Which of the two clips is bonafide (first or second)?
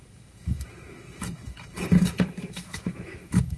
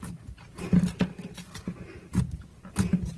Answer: second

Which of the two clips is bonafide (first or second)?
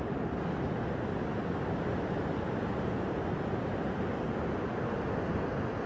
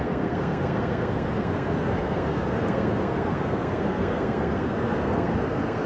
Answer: first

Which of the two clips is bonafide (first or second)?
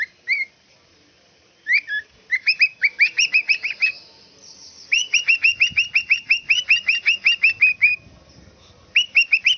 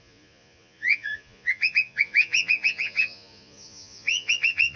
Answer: first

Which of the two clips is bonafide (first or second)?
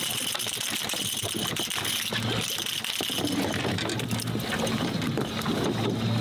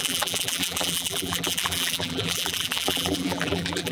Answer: first